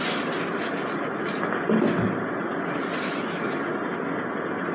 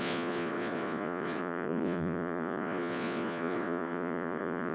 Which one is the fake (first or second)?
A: second